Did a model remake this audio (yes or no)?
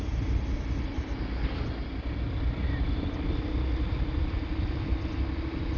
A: no